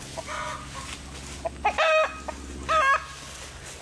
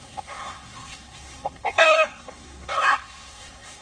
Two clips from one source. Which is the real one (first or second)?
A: first